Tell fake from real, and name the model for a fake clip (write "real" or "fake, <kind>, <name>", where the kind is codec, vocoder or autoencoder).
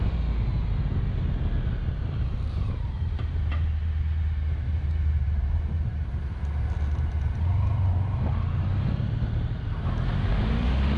real